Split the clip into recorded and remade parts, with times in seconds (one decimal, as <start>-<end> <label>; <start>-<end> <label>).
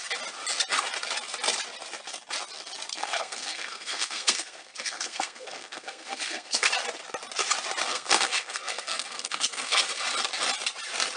0.0-2.9 recorded; 2.9-6.7 remade; 6.7-7.9 recorded; 7.9-9.8 remade; 9.8-11.2 recorded